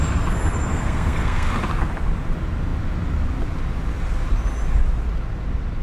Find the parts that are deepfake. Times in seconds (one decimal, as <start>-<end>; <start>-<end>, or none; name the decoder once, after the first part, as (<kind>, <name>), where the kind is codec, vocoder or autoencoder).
0.7-1.5 (codec, SNAC)